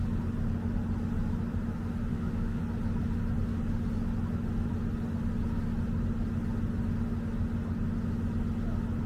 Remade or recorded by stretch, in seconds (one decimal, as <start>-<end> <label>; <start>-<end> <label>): 0.0-2.1 recorded; 2.1-2.6 remade; 2.6-9.1 recorded